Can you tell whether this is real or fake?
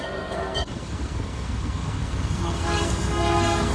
fake